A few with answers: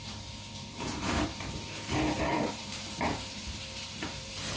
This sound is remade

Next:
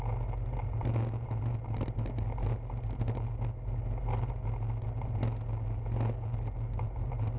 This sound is recorded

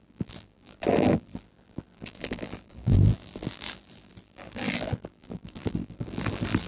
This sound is remade